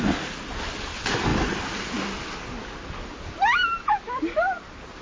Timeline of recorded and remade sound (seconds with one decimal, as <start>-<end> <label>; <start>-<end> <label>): 0.0-5.0 recorded